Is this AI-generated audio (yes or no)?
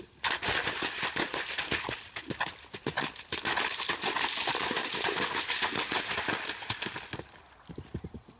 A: no